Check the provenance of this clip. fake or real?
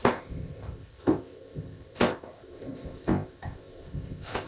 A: fake